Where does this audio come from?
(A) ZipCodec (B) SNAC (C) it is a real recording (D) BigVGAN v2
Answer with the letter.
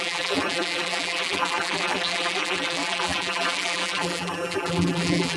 D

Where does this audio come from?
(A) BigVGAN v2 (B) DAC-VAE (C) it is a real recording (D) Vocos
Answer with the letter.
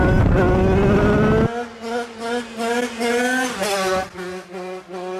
C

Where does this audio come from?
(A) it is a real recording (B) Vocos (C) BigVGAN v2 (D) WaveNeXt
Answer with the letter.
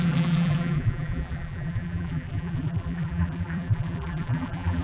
C